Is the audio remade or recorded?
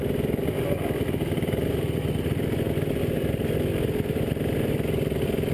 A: recorded